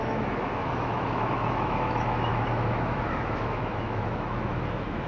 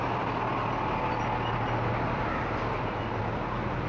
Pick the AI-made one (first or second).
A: first